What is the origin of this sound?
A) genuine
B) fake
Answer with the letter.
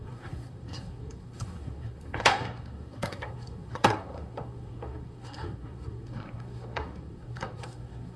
B